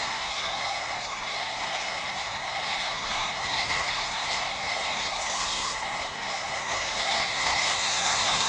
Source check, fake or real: fake